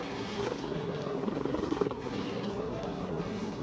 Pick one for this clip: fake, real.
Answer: fake